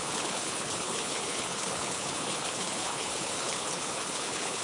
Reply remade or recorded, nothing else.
remade